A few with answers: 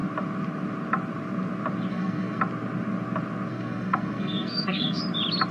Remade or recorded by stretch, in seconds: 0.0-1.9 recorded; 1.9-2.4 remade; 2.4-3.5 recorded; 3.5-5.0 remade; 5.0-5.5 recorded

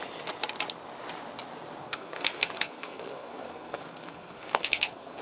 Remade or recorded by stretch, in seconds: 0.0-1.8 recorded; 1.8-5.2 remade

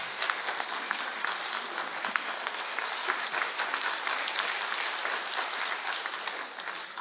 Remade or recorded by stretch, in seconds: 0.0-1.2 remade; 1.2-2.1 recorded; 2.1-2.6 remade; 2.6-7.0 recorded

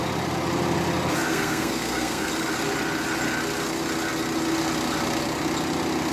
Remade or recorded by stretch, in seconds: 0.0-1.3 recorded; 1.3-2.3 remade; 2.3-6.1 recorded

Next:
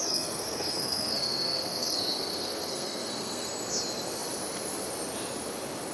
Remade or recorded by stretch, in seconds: 0.0-3.5 remade; 3.5-5.9 recorded

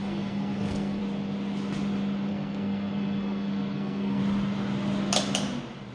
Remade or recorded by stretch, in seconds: 0.0-1.0 remade; 1.0-2.3 recorded; 2.3-4.2 remade; 4.2-5.9 recorded

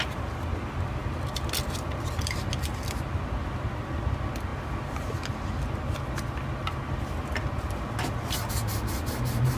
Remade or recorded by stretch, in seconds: 0.0-9.6 recorded

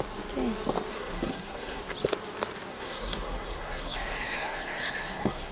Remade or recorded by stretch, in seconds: 0.0-0.9 recorded; 0.9-1.8 remade; 1.8-2.7 recorded; 2.7-5.5 remade